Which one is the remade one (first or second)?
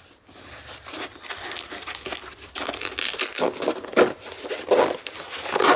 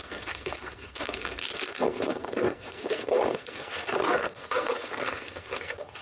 second